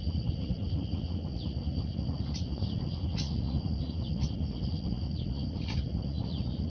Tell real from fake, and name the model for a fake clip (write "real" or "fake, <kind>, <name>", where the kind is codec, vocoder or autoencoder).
fake, vocoder, Vocos